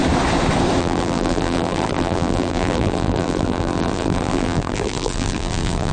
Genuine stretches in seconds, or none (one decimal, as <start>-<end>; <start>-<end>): 0.0-0.8

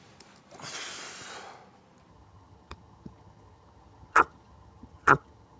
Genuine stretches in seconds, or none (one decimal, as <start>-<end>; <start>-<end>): 0.0-2.1

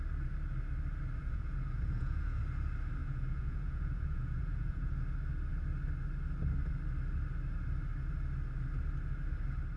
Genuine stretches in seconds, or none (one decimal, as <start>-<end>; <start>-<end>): 0.0-1.2; 2.4-3.0; 4.9-9.8

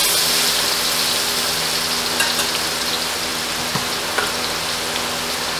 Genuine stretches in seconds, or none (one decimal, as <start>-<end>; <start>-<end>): 0.0-5.6

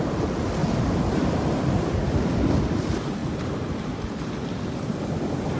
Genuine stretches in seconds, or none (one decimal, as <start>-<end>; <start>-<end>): 0.0-0.6; 2.2-3.2; 4.0-5.6

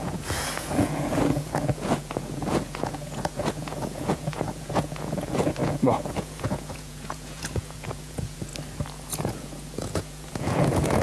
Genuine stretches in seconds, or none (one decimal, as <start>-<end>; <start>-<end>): 8.5-9.1